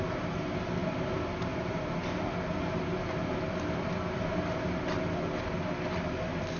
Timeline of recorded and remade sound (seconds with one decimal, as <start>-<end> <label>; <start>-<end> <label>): 0.0-6.6 recorded